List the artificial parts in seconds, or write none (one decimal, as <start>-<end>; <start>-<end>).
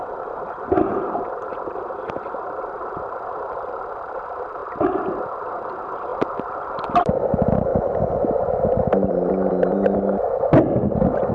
4.6-5.2